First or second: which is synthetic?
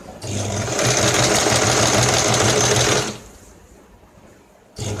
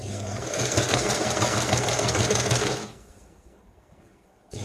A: second